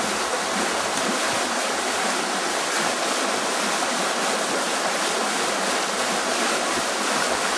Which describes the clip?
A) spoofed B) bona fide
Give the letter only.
B